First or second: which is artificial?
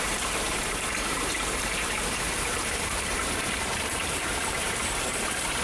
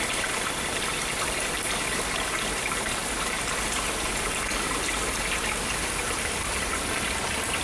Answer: first